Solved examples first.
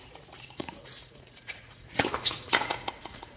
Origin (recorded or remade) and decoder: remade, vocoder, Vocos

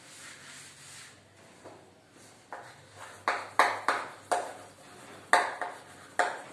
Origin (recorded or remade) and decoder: recorded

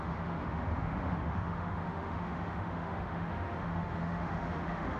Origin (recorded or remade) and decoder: remade, autoencoder, DAC-VAE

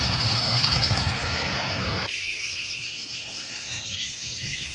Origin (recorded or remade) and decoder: remade, codec, SNAC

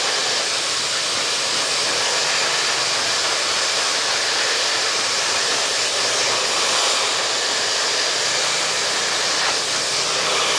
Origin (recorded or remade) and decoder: recorded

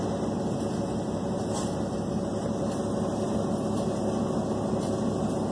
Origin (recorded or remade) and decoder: recorded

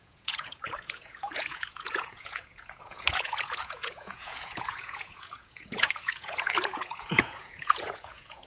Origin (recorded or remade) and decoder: remade, vocoder, Vocos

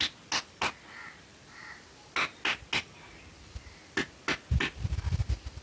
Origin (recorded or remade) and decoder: recorded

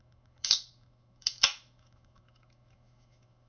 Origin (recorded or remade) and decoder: remade, autoencoder, DAC-VAE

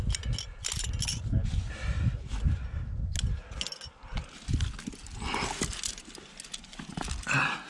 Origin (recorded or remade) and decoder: recorded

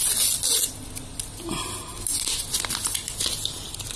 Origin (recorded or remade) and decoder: recorded